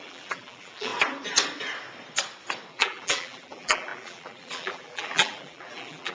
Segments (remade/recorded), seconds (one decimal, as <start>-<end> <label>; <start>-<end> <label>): 0.0-0.9 remade; 0.9-2.7 recorded; 2.7-6.1 remade